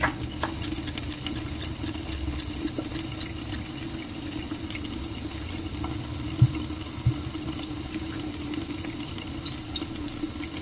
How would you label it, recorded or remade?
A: recorded